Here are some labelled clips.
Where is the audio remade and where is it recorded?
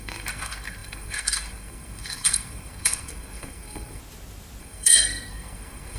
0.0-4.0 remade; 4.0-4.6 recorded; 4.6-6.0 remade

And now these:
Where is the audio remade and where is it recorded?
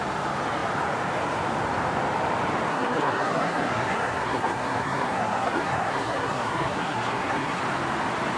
0.0-2.7 recorded; 2.7-7.6 remade; 7.6-8.4 recorded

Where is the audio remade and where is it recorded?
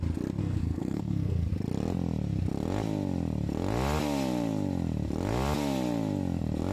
0.0-0.4 recorded; 0.4-1.5 remade; 1.5-6.7 recorded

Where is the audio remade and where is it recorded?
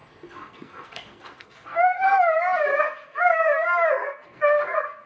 0.0-2.0 remade; 2.0-2.7 recorded; 2.7-5.1 remade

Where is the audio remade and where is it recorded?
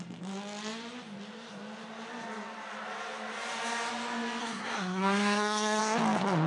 0.0-4.4 recorded; 4.4-5.8 remade; 5.8-6.5 recorded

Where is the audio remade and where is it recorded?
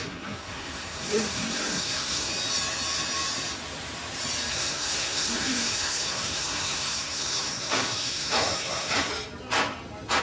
0.0-2.3 remade; 2.3-4.5 recorded; 4.5-9.1 remade; 9.1-10.2 recorded